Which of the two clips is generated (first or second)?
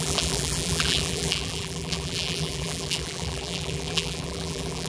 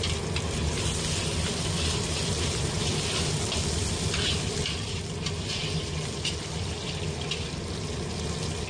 first